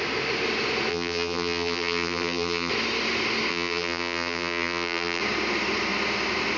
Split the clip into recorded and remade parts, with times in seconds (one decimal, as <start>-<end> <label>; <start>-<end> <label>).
0.0-0.9 recorded; 0.9-2.7 remade; 2.7-3.5 recorded; 3.5-5.2 remade; 5.2-6.6 recorded